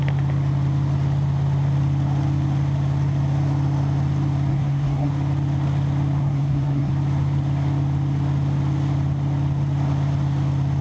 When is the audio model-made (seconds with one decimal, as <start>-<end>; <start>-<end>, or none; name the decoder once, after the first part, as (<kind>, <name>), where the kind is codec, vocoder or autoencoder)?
4.5-5.1 (codec, SNAC); 6.2-6.9